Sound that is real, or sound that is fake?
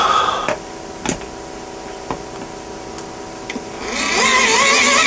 real